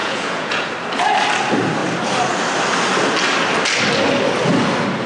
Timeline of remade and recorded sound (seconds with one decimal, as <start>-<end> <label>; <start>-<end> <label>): 0.0-0.7 remade; 0.7-5.1 recorded